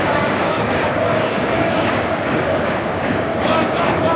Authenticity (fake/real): fake